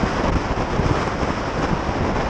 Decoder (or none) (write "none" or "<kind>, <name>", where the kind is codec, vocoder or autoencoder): none